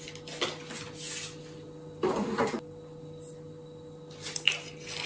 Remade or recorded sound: recorded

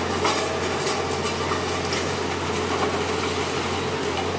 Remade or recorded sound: recorded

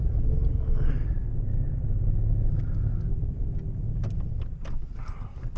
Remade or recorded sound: recorded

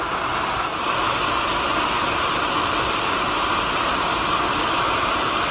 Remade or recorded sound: recorded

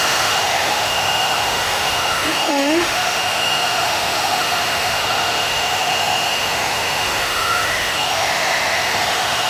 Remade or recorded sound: remade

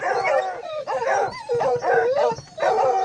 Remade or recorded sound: recorded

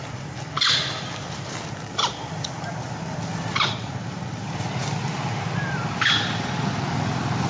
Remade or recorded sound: recorded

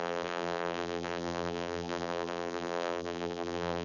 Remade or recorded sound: remade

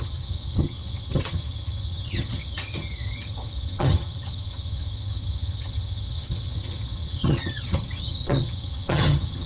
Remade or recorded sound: remade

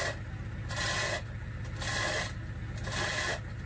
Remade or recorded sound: recorded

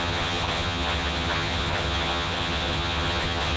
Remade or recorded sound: remade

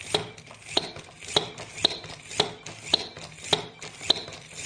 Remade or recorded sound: recorded